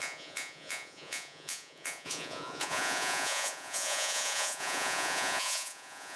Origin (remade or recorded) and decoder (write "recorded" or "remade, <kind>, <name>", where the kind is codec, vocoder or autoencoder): remade, vocoder, Vocos